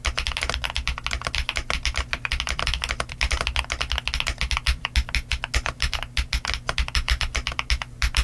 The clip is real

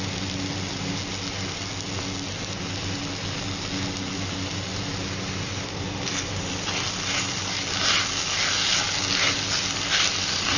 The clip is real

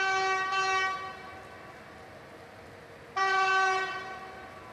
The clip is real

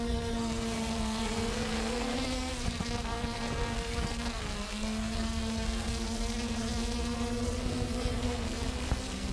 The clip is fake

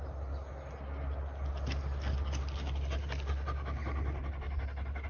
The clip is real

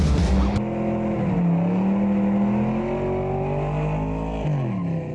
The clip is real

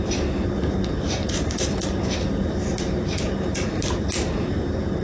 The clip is real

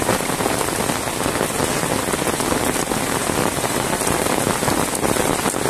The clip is real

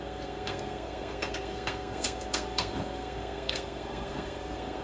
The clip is fake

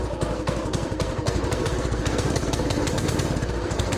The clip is fake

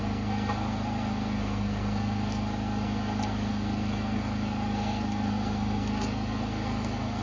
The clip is fake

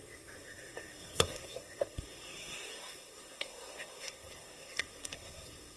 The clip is fake